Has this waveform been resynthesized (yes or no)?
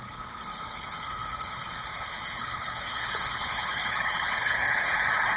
yes